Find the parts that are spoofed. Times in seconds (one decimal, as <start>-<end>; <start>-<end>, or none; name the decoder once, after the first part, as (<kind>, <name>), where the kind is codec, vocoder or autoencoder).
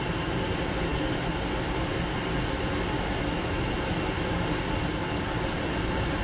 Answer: 5.0-5.5 (codec, DAC)